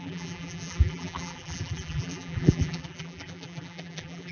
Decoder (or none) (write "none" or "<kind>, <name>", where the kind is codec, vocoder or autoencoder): vocoder, BigVGAN v2